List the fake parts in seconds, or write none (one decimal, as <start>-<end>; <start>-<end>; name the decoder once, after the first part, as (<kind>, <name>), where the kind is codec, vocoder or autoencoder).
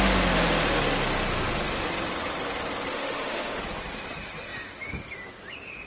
2.9-3.6 (autoencoder, DAC-VAE)